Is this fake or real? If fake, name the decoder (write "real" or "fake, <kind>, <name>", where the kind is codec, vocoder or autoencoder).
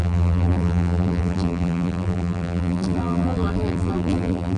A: fake, vocoder, BigVGAN v2